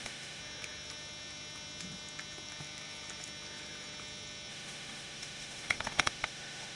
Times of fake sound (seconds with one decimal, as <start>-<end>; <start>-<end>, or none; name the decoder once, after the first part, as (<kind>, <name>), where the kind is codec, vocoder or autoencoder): 0.0-0.4 (autoencoder, DAC-VAE); 4.5-6.8